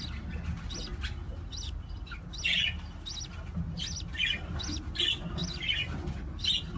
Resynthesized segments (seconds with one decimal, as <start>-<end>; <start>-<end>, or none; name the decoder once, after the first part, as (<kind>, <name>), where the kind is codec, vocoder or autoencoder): none